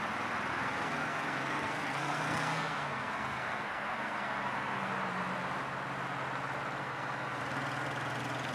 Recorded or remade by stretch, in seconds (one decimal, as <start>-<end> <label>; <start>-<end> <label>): 0.0-0.5 recorded; 0.5-4.9 remade; 4.9-6.8 recorded; 6.8-7.4 remade; 7.4-8.5 recorded